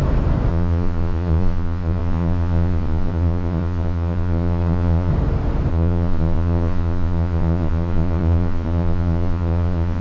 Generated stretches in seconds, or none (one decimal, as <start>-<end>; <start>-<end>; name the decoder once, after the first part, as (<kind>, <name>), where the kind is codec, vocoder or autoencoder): 0.5-5.1 (vocoder, Vocos); 5.7-10.0